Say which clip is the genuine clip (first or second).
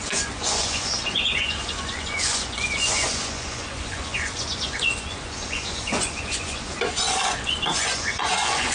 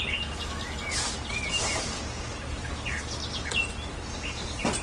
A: second